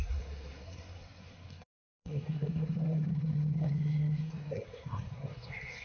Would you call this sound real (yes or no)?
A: no